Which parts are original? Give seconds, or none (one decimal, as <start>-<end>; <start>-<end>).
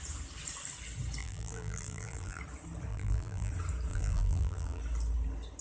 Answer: 0.0-1.2; 2.4-2.9; 3.5-3.9; 4.8-5.6